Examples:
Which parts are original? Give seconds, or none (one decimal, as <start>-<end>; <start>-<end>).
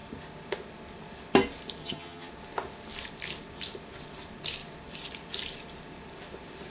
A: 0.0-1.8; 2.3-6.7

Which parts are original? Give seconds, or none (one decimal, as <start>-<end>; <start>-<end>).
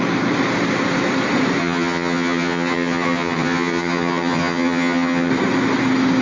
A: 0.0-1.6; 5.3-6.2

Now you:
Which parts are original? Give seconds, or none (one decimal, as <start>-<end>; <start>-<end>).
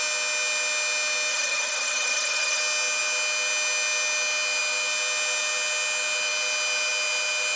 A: 0.0-1.3; 2.6-7.6